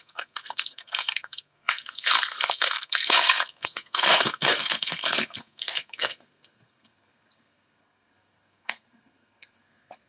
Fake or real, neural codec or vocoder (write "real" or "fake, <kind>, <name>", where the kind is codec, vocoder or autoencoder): fake, codec, SNAC